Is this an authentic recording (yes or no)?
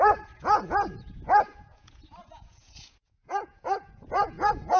no